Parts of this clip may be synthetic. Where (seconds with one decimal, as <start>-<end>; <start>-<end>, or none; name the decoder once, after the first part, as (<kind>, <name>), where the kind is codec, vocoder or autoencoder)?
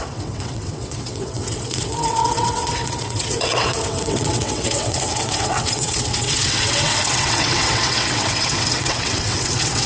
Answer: 0.0-9.9 (vocoder, WaveNeXt)